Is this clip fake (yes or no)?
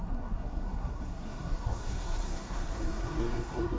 yes